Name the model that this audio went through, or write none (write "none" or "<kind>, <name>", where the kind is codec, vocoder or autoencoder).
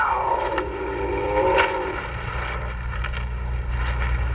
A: none